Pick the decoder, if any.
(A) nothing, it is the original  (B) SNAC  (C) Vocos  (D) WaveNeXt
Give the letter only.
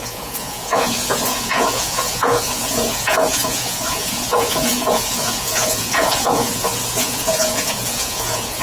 C